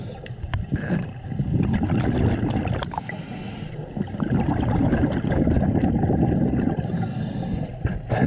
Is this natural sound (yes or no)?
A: yes